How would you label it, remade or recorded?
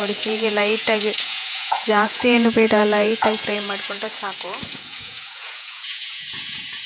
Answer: remade